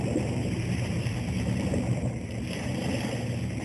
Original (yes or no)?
no